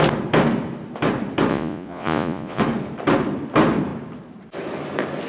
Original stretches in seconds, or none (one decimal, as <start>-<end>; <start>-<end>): 0.0-1.5; 2.6-5.3